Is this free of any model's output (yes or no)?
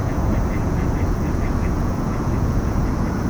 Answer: no